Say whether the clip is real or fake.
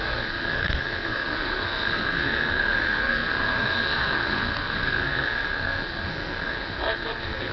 fake